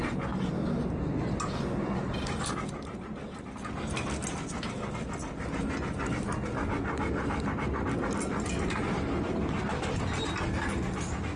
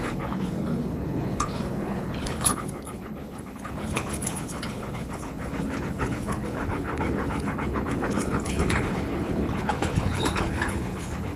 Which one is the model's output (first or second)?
second